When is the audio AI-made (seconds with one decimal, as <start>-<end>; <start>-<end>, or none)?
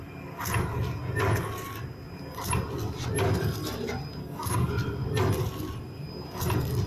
4.2-4.7